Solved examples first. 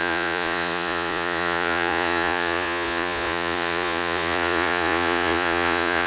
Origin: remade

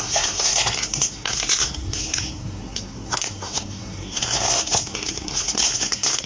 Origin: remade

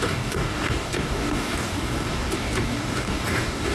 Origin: remade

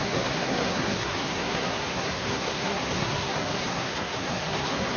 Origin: remade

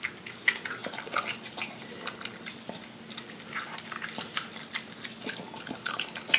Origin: recorded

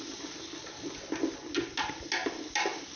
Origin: recorded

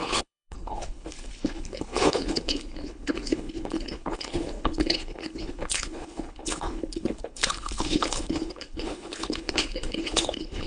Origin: remade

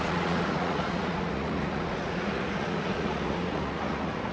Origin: remade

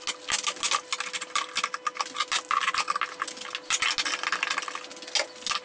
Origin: recorded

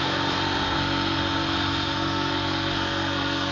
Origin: remade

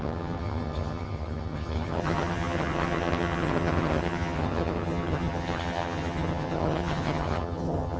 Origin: remade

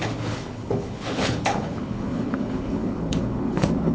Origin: remade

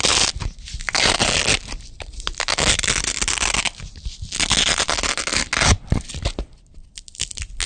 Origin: recorded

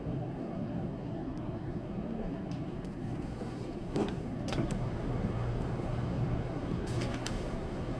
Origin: remade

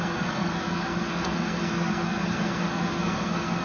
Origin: remade